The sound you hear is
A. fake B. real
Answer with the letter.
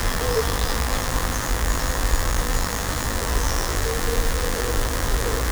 A